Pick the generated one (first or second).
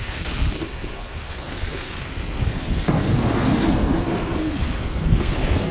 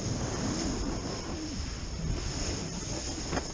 first